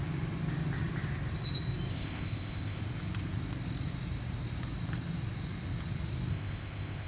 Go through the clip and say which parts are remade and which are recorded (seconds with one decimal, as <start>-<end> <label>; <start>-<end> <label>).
0.0-1.9 recorded; 1.9-2.8 remade; 2.8-6.3 recorded; 6.3-7.1 remade